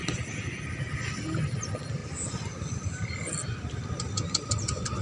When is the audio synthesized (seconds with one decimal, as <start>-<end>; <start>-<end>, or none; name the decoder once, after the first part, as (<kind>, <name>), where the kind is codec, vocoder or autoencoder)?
none